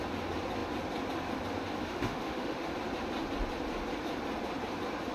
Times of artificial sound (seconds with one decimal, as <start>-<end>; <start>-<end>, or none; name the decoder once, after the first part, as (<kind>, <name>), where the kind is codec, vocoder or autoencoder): 1.8-2.7 (autoencoder, DAC-VAE)